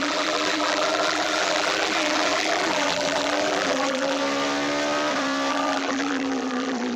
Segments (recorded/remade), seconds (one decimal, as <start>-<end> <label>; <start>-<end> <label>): 0.0-4.2 remade; 4.2-5.5 recorded; 5.5-7.0 remade